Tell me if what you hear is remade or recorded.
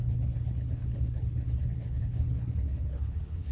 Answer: remade